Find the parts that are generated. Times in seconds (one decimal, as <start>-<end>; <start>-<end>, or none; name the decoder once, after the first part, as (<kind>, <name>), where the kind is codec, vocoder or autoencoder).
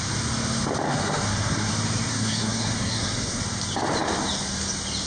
0.9-1.7 (codec, SNAC); 2.1-3.4